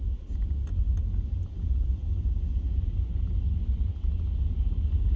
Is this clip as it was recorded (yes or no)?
yes